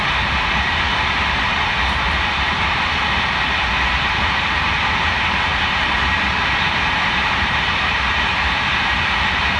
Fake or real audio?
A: fake